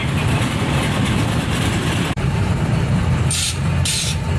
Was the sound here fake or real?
fake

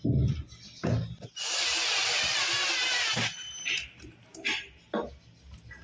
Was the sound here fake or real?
real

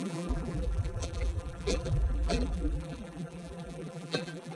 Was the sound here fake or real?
fake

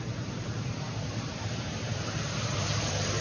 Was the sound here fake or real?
fake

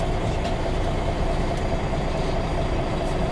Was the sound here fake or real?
fake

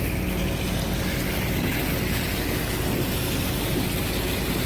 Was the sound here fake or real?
real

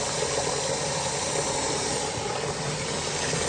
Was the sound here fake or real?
real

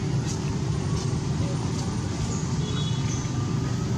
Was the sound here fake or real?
real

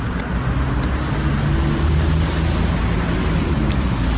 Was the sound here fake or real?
real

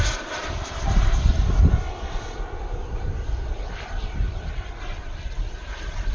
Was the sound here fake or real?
fake